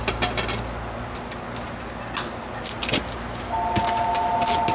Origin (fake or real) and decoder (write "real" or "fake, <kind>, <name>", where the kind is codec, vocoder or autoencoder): real